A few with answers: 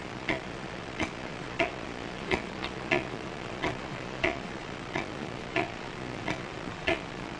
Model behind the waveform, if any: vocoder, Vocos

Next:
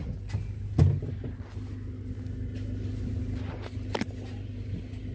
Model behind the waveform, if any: none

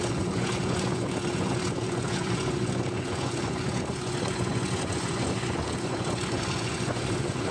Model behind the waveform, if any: vocoder, Vocos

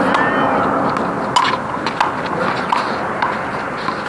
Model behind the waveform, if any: none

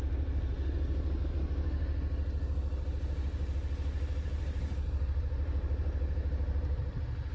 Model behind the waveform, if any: none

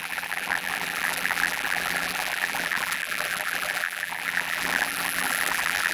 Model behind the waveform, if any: vocoder, BigVGAN v2